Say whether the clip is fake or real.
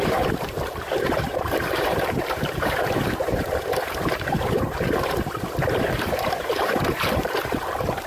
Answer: fake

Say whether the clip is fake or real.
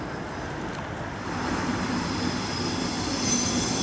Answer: fake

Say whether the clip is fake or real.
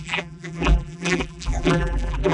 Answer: fake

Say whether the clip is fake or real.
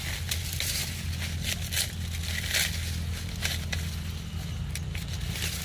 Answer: real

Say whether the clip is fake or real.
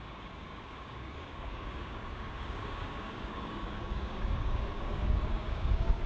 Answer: fake